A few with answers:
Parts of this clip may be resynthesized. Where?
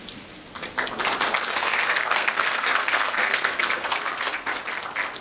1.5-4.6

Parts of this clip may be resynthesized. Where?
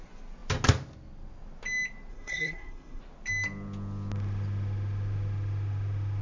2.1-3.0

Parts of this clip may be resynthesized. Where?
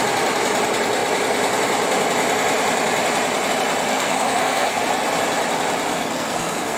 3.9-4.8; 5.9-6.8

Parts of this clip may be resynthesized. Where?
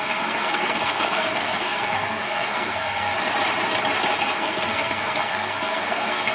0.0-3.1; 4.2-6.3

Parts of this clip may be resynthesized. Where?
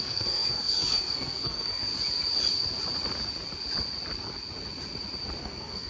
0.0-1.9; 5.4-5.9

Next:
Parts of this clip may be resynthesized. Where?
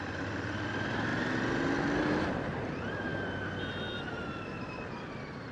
none